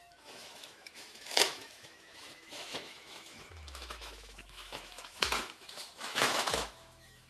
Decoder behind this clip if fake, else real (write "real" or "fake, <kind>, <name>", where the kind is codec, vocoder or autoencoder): fake, autoencoder, DAC-VAE